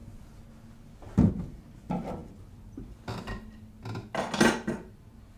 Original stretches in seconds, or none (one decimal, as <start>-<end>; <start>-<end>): 0.0-5.4